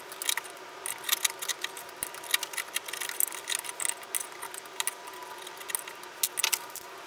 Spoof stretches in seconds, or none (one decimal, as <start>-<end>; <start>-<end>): none